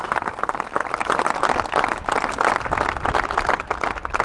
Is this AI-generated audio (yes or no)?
no